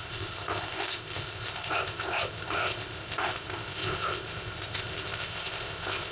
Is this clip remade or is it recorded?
remade